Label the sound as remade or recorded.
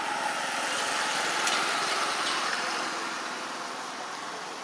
recorded